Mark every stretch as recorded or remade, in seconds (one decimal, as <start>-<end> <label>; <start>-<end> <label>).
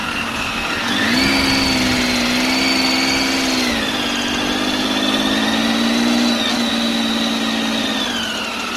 0.0-0.9 remade; 0.9-8.8 recorded